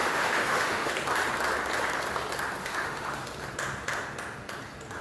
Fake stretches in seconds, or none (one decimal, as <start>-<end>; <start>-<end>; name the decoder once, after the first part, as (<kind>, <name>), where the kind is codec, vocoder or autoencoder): 0.0-0.9 (autoencoder, DAC-VAE); 2.6-3.1